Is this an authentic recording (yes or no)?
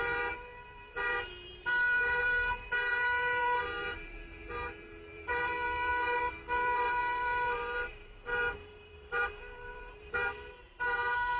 no